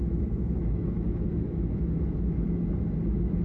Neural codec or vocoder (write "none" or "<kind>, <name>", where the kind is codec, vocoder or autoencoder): autoencoder, DAC-VAE